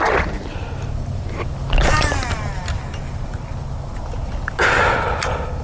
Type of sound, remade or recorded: recorded